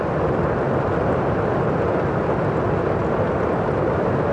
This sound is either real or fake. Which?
real